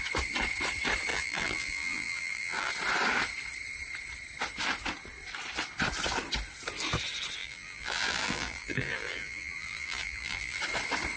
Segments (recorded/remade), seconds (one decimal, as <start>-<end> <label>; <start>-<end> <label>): 0.0-1.1 recorded; 1.1-2.7 remade; 2.7-7.4 recorded; 7.4-10.6 remade; 10.6-11.2 recorded